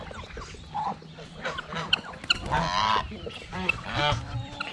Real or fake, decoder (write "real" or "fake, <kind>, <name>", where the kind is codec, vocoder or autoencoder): real